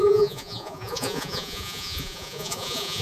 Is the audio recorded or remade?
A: remade